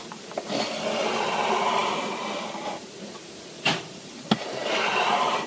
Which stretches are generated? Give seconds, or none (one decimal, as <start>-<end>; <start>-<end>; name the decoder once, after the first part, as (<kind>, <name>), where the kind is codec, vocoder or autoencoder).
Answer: none